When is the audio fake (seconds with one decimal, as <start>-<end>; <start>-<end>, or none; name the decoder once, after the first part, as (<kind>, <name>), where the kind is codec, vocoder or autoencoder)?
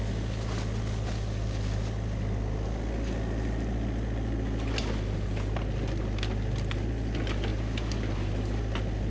none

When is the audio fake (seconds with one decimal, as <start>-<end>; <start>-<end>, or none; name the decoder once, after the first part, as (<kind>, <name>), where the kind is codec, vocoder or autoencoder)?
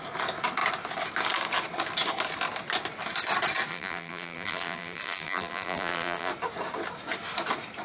3.7-6.3 (vocoder, BigVGAN v2)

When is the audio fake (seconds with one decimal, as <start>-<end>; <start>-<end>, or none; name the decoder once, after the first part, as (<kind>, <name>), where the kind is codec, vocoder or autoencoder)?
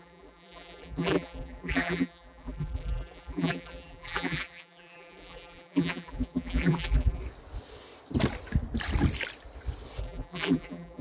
0.0-7.2 (vocoder, BigVGAN v2); 10.0-11.0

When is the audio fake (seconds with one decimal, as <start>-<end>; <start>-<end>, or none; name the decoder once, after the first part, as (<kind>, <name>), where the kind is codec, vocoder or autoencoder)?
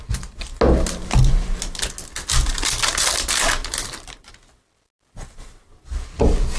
3.6-4.3 (vocoder, BigVGAN v2)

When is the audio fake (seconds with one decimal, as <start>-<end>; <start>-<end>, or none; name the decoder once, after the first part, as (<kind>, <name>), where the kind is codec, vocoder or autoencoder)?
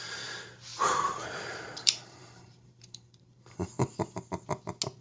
0.7-3.7 (vocoder, BigVGAN v2)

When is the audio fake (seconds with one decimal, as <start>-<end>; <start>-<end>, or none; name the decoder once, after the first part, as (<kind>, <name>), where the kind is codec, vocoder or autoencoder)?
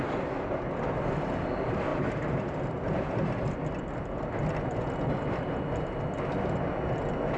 none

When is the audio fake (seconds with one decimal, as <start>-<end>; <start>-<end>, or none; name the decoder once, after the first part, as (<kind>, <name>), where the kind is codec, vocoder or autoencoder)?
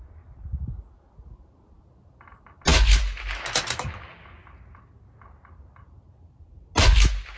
none